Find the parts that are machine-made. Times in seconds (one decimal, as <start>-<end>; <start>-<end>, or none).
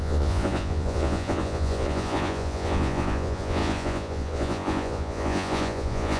0.0-6.2